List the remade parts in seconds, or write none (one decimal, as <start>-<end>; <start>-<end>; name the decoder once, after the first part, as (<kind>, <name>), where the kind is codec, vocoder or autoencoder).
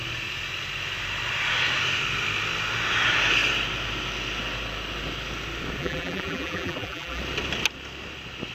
5.8-7.2 (vocoder, BigVGAN v2)